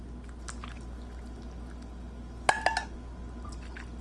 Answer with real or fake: real